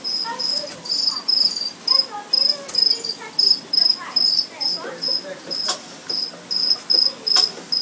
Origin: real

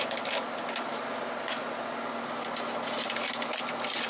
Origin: real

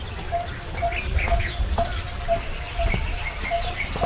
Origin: real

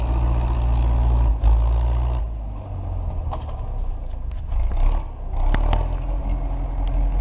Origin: real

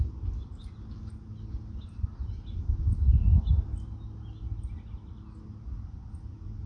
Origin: real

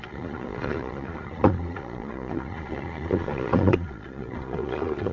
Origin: fake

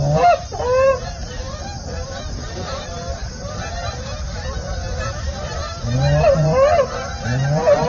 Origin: real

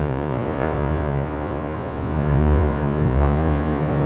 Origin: fake